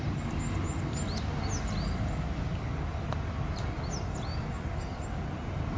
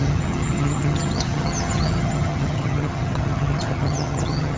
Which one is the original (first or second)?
first